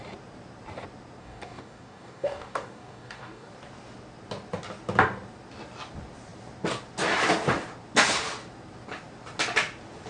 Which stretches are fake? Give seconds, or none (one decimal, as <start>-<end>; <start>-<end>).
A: 1.2-3.5